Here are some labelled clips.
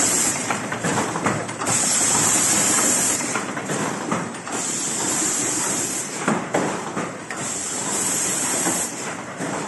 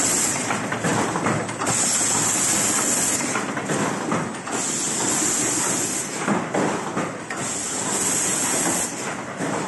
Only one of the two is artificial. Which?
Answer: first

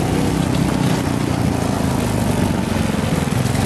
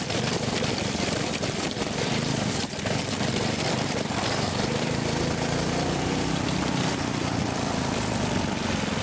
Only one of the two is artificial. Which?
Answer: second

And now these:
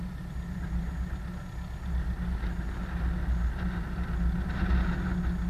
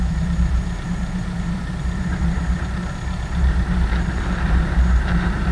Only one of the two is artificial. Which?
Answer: second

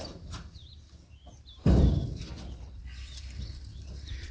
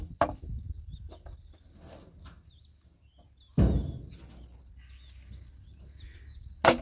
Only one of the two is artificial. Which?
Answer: first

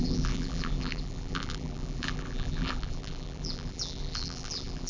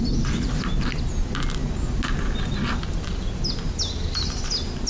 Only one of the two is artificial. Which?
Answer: first